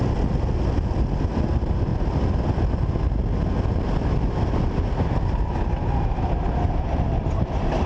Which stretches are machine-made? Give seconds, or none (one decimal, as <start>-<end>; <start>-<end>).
none